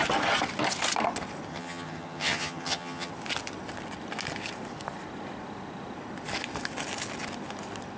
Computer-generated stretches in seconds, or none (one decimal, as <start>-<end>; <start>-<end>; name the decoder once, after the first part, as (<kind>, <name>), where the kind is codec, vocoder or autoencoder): 1.5-3.1 (vocoder, HiFi-GAN)